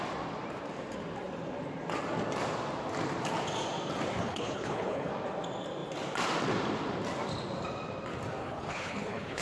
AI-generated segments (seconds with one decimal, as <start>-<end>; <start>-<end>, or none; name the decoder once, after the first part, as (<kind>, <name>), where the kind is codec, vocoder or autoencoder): 4.2-5.1 (codec, HILCodec); 8.4-9.4